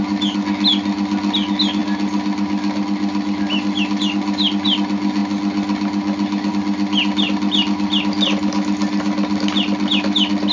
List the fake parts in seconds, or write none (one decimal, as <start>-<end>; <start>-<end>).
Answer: none